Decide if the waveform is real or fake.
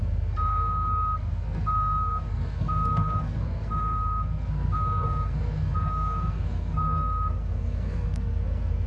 fake